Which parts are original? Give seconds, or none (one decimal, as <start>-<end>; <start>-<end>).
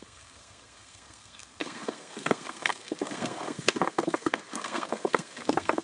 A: none